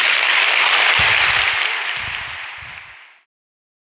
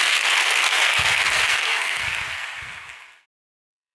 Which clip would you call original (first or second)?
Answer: first